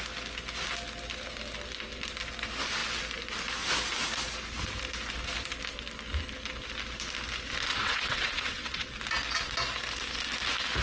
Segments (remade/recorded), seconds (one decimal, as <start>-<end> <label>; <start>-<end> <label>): 0.0-7.7 recorded; 7.7-8.9 remade; 8.9-10.8 recorded